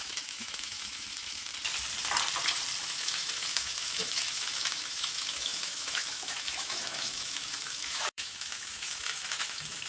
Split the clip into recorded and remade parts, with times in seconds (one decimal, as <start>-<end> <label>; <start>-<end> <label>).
0.0-1.5 remade; 1.5-2.8 recorded; 2.8-9.9 remade